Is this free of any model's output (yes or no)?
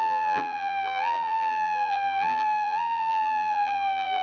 no